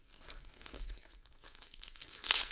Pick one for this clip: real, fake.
fake